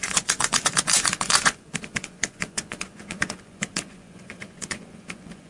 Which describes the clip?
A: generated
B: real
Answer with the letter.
A